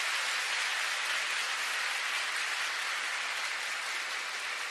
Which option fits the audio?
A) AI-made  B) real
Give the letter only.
B